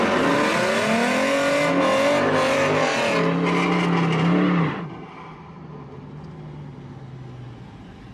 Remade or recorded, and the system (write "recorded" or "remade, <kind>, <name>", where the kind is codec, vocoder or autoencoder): recorded